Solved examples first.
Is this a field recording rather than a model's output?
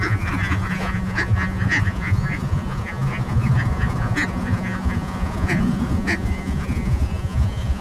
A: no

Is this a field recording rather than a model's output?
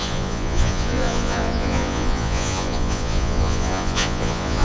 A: no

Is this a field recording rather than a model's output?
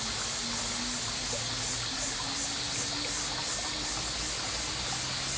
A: yes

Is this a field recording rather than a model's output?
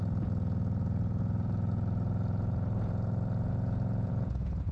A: no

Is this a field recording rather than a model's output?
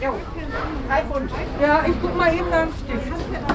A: yes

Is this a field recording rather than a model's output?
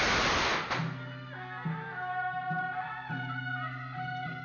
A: yes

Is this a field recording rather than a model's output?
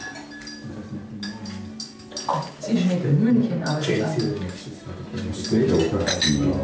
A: yes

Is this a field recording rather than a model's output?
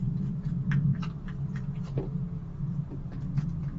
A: yes